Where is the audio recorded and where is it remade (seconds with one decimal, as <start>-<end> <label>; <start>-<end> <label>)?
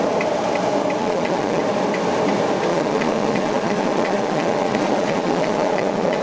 0.0-1.0 recorded; 1.0-1.6 remade; 1.6-2.7 recorded; 2.7-6.2 remade